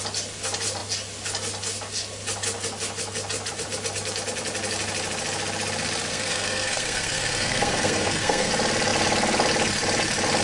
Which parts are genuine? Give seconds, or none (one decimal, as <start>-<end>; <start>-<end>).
0.0-6.1; 8.5-10.4